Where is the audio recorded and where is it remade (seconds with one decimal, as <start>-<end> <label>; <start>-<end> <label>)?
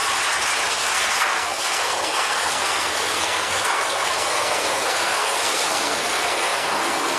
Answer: 0.0-0.7 recorded; 0.7-7.2 remade